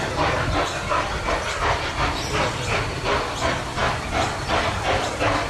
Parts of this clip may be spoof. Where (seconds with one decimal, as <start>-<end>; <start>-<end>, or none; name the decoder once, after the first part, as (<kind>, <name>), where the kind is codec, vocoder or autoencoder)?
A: none